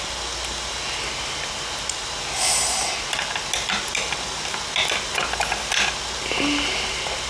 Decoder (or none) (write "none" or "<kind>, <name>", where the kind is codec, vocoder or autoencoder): none